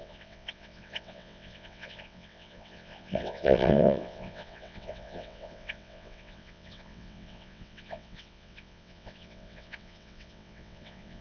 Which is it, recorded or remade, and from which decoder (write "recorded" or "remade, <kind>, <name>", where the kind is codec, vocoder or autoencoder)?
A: remade, vocoder, WaveNeXt